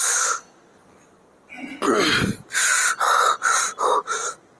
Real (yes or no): yes